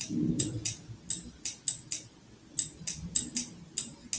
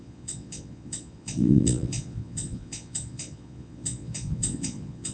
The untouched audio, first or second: first